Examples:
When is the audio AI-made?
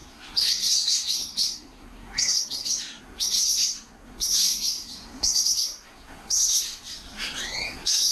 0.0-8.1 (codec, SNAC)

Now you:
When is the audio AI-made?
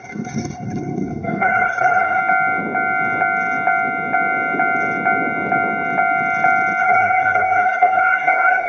0.0-2.2 (codec, SNAC); 6.8-8.7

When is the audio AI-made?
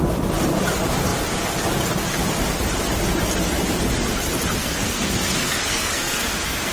4.6-6.7 (codec, SNAC)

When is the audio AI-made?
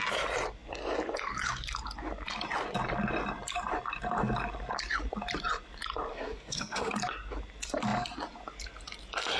6.1-6.9 (codec, SNAC)